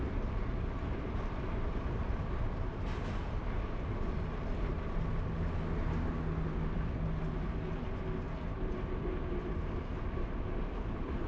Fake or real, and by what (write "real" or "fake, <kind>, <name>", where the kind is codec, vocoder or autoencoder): real